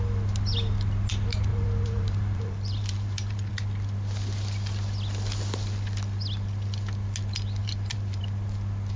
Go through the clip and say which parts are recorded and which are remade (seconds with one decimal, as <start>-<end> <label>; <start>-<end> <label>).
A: 0.0-1.5 recorded; 1.5-3.5 remade; 3.5-7.6 recorded; 7.6-8.2 remade; 8.2-9.0 recorded